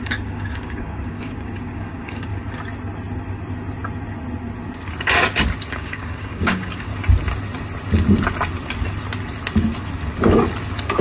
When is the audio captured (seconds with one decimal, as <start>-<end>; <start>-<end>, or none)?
2.3-5.7; 6.9-11.0